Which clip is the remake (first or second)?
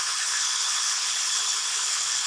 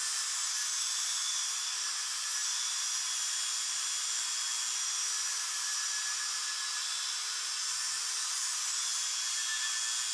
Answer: first